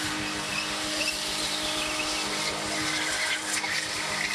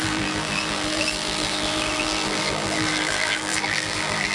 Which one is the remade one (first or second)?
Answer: second